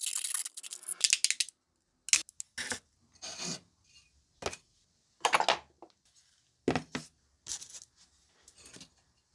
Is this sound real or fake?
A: real